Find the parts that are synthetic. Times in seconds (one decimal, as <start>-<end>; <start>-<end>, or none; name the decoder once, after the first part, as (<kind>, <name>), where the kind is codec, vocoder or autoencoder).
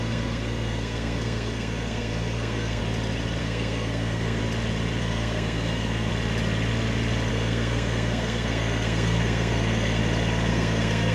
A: 0.0-2.8 (codec, SNAC); 3.4-4.4; 5.0-6.1; 7.3-10.0; 10.5-11.1